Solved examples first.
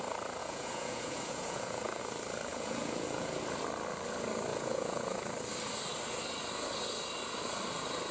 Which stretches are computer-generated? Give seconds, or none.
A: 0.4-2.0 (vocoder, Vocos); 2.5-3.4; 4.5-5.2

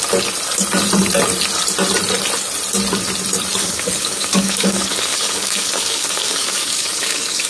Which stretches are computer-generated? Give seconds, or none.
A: 3.6-7.5 (codec, DAC)

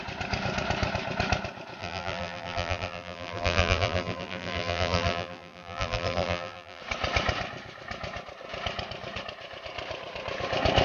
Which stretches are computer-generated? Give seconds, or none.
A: 1.8-6.8 (vocoder, BigVGAN v2)

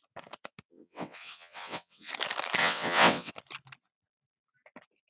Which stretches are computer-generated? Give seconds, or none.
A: 0.7-2.1 (vocoder, WaveNeXt); 2.6-3.3

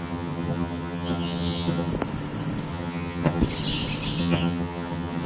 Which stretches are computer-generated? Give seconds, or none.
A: 0.0-1.9 (vocoder, HiFi-GAN); 2.7-3.4; 4.2-5.3

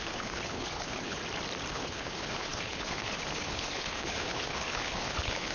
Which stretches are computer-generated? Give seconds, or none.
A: 0.0-1.2 (codec, HILCodec); 1.7-5.5